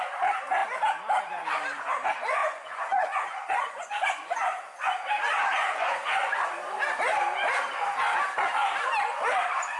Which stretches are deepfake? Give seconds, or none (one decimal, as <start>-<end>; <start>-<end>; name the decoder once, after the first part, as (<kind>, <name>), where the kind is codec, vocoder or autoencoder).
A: 2.4-4.9 (vocoder, Vocos); 5.6-6.5